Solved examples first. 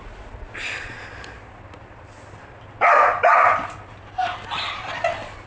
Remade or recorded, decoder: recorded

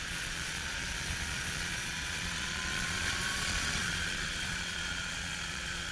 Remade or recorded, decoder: remade, vocoder, Vocos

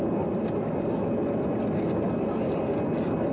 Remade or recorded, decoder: recorded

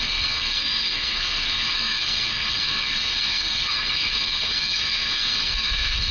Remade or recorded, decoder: remade, codec, SNAC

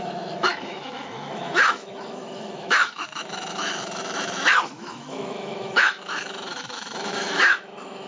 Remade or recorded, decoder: remade, autoencoder, DAC-VAE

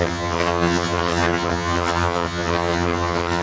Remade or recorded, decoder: remade, vocoder, HiFi-GAN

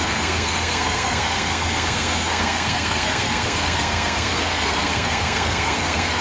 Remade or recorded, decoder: remade, codec, SNAC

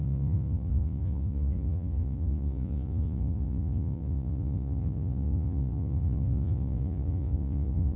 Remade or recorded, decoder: remade, vocoder, Vocos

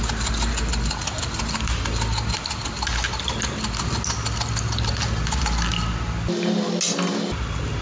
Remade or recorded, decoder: recorded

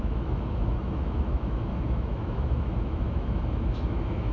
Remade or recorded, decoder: remade, autoencoder, DAC-VAE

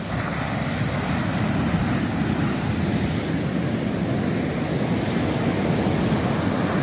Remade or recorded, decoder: recorded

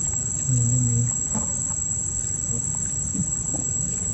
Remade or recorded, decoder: recorded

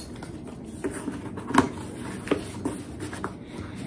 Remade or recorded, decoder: recorded